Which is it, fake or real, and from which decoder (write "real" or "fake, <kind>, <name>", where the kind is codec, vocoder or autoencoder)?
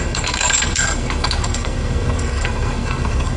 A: fake, codec, SNAC